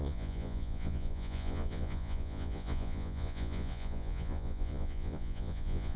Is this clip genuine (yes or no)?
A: no